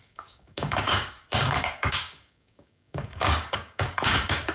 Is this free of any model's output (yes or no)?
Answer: no